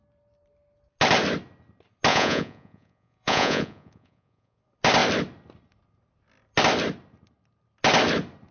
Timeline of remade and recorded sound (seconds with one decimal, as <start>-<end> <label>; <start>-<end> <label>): 0.0-2.1 recorded; 2.1-4.6 remade; 4.6-8.5 recorded